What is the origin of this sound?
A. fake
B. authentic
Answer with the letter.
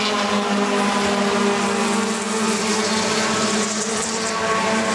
B